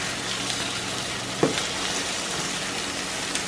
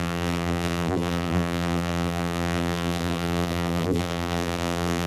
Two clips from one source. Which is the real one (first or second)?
first